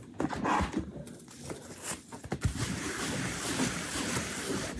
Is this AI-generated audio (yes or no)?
no